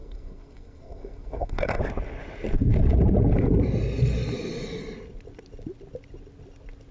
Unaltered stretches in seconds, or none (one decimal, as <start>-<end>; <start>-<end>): 1.8-6.9